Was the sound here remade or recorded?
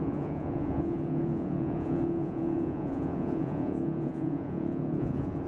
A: remade